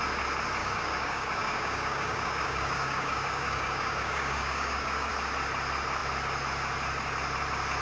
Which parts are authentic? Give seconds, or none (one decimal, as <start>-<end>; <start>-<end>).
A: 0.0-0.6; 5.1-7.8